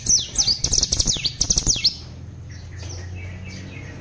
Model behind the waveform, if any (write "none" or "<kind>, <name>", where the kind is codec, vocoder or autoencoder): none